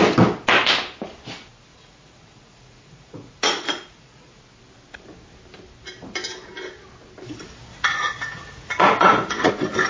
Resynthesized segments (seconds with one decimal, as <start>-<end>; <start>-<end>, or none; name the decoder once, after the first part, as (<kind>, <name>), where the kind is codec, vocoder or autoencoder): 1.7-4.4 (vocoder, Vocos); 7.7-9.5